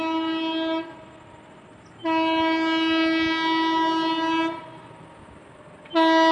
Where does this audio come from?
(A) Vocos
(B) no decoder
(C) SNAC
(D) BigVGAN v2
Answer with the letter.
B